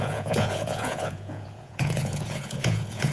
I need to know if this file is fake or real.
fake